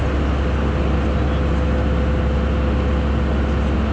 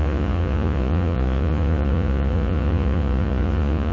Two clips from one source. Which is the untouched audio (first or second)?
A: first